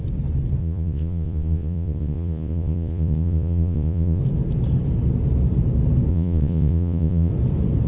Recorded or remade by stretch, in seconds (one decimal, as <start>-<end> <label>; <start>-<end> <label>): 0.0-0.6 recorded; 0.6-4.2 remade; 4.2-6.1 recorded; 6.1-7.3 remade; 7.3-7.9 recorded